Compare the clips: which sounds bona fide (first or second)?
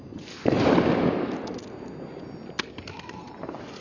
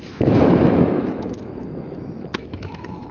first